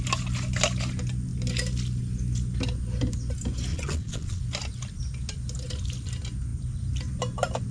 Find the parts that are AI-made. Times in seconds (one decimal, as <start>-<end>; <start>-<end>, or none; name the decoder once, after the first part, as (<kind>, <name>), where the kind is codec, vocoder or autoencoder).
3.7-4.4 (vocoder, Vocos)